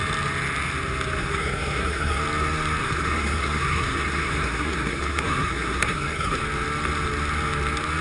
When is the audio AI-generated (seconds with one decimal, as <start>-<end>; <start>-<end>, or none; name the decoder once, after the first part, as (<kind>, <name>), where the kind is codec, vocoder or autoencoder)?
1.2-2.2 (codec, SNAC); 2.8-6.4